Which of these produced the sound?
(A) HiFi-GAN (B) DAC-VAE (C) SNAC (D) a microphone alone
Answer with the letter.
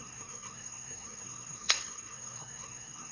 C